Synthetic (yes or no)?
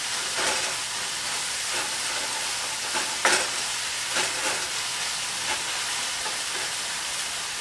no